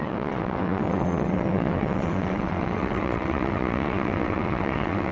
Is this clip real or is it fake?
fake